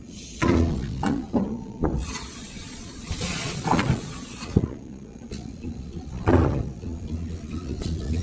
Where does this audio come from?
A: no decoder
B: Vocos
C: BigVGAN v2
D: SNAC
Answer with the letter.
B